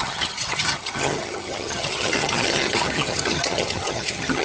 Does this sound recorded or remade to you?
remade